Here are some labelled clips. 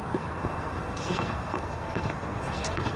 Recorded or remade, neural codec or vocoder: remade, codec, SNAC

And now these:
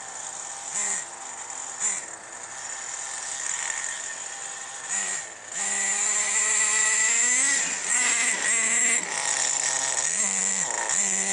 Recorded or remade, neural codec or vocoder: recorded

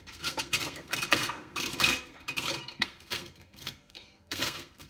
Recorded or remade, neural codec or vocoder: remade, codec, SNAC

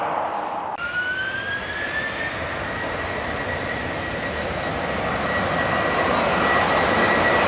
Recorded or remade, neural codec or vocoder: recorded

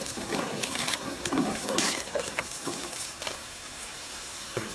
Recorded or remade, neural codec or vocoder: remade, codec, SNAC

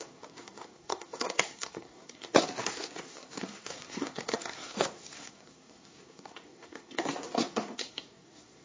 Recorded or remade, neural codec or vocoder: remade, codec, SNAC